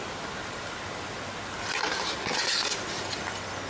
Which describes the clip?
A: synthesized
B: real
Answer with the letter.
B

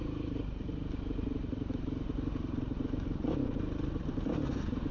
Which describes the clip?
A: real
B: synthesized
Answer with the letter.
B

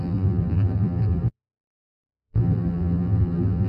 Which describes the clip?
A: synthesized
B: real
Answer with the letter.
A